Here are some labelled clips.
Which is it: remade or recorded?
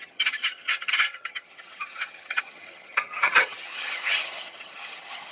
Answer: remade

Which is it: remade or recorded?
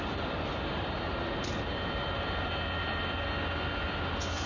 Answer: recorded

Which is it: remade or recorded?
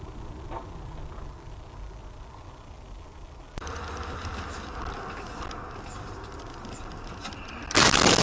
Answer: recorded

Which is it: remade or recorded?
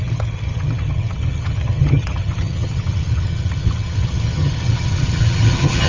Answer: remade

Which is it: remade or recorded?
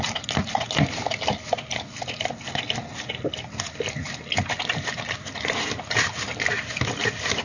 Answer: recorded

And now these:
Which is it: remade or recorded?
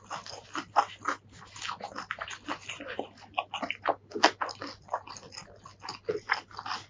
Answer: recorded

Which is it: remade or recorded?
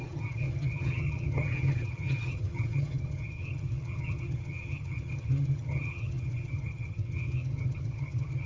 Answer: remade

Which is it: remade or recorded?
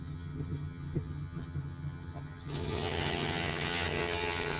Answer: remade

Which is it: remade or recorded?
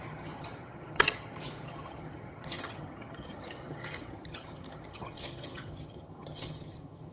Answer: remade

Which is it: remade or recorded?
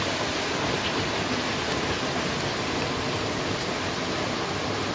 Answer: recorded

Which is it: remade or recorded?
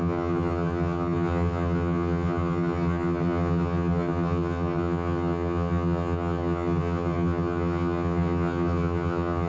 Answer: remade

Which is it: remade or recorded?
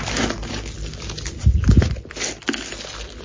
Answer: recorded